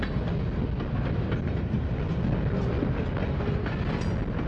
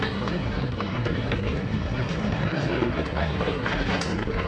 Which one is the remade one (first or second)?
second